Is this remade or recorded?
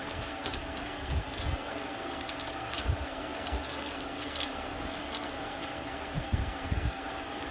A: remade